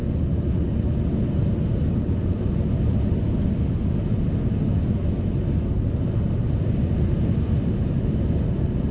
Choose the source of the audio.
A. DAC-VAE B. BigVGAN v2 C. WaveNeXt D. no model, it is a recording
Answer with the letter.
D